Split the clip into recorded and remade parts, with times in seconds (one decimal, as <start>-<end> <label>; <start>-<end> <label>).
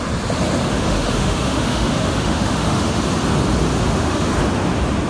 0.0-0.7 recorded; 0.7-3.0 remade; 3.0-3.7 recorded; 3.7-4.4 remade; 4.4-5.1 recorded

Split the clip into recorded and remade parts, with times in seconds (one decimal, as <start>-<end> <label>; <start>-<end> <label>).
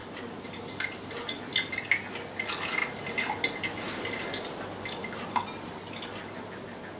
0.0-7.0 recorded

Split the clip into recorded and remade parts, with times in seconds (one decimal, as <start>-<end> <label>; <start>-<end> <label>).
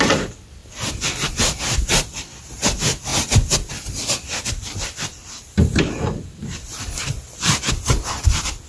0.0-3.1 remade; 3.1-3.7 recorded; 3.7-8.7 remade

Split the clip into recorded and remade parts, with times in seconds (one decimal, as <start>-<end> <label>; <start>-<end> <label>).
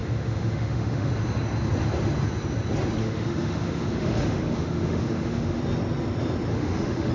0.0-1.1 remade; 1.1-3.0 recorded; 3.0-5.6 remade; 5.6-6.5 recorded; 6.5-7.1 remade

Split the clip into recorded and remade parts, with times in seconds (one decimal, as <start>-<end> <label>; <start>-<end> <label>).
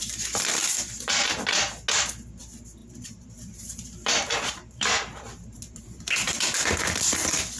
0.0-2.8 recorded; 2.8-6.8 remade; 6.8-7.6 recorded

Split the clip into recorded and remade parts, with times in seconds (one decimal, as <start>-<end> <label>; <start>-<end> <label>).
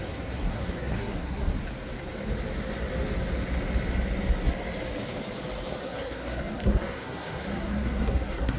0.0-1.6 remade; 1.6-5.8 recorded; 5.8-8.6 remade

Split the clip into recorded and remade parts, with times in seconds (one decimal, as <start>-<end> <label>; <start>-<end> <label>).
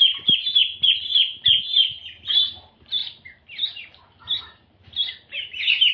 0.0-1.1 remade; 1.1-2.3 recorded; 2.3-3.0 remade; 3.0-4.4 recorded; 4.4-5.9 remade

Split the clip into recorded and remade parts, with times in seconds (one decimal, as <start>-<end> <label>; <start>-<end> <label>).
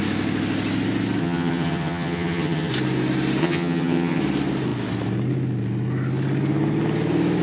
0.0-1.2 recorded; 1.2-2.7 remade; 2.7-3.4 recorded; 3.4-4.2 remade; 4.2-7.4 recorded